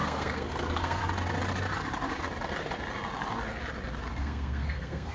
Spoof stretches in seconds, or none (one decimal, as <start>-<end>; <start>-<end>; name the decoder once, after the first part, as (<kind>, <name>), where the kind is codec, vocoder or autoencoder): 0.0-1.0 (codec, SNAC); 4.1-5.1